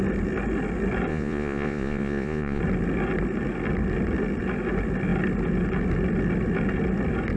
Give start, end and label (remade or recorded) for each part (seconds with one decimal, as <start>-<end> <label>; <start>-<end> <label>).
0.0-1.1 recorded; 1.1-2.6 remade; 2.6-7.4 recorded